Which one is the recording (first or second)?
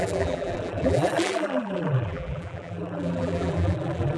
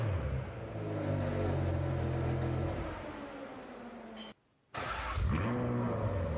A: second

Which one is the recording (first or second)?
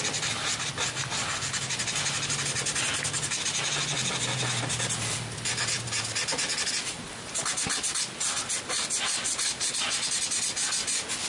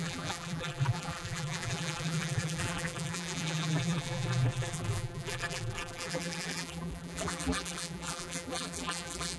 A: first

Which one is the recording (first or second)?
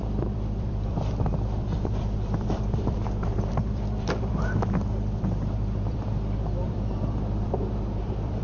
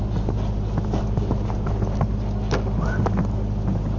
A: second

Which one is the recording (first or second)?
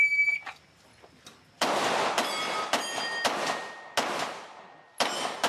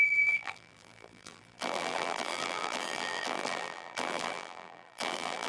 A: first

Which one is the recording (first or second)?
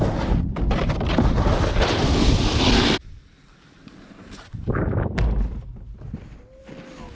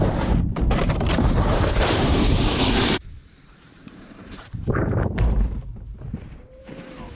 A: first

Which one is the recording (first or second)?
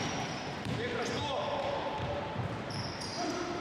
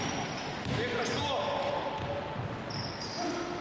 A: second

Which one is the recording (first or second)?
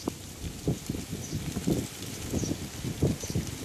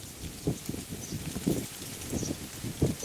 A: second